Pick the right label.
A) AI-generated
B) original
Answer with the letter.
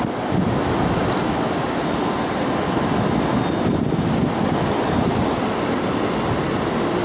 B